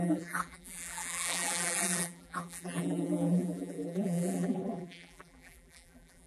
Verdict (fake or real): fake